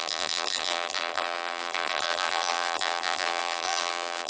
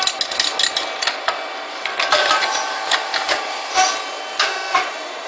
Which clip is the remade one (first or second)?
first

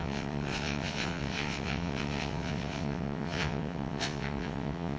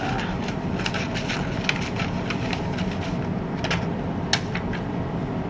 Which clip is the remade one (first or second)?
first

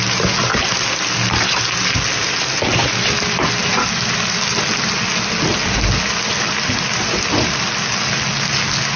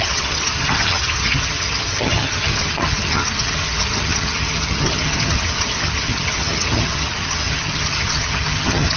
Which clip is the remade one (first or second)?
second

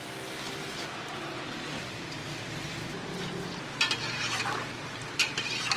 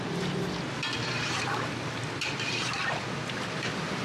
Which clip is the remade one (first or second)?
second